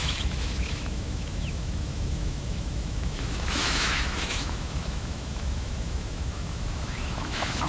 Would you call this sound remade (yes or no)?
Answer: yes